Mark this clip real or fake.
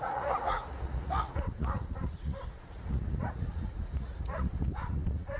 fake